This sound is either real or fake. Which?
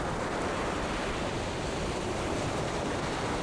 real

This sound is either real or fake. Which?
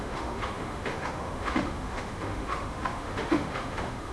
fake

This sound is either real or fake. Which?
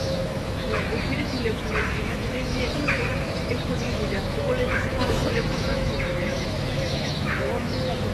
fake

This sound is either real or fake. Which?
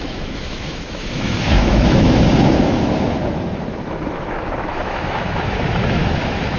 fake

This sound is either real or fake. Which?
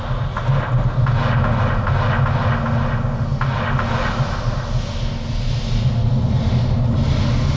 real